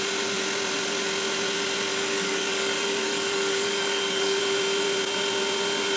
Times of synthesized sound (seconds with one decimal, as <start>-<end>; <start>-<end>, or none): 1.9-4.4

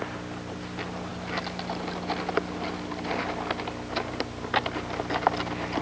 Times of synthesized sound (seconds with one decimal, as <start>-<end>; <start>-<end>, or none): none

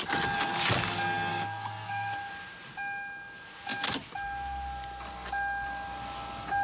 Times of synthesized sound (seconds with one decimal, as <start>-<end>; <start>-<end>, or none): 1.3-2.3

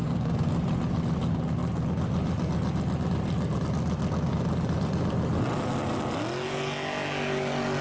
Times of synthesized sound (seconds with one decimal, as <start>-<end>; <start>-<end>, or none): 0.0-0.5

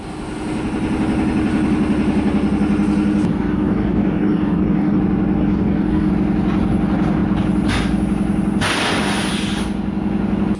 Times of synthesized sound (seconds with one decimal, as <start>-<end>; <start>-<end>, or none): 3.3-5.0; 5.4-6.1